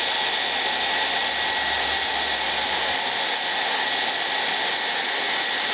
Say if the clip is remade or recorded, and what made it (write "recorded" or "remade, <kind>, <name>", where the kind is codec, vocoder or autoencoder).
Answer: recorded